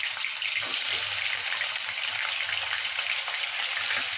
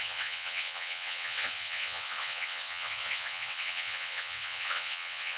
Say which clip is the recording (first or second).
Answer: first